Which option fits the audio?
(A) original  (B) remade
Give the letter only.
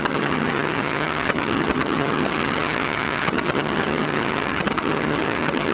B